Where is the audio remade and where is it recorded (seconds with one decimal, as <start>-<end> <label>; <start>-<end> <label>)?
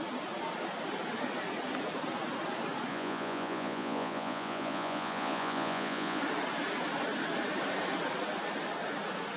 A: 0.0-2.9 recorded; 2.9-6.2 remade; 6.2-9.4 recorded